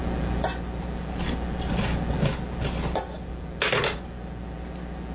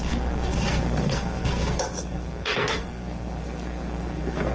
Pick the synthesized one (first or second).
second